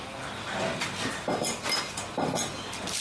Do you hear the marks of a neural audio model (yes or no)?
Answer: no